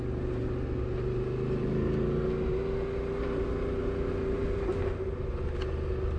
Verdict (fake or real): real